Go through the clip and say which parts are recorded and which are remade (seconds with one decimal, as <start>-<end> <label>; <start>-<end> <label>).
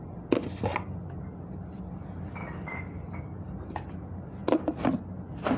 0.0-5.6 recorded